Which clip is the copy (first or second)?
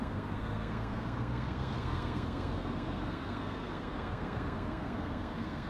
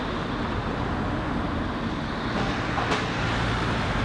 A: first